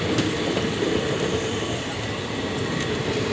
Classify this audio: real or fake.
real